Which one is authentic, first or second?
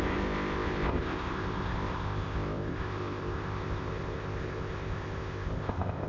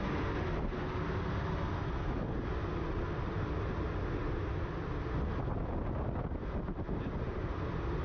second